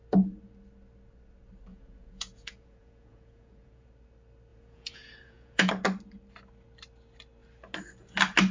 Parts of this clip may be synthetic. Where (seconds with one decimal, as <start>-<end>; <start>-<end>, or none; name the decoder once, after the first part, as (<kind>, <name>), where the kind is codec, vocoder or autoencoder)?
1.7-3.9 (vocoder, Vocos); 4.5-5.7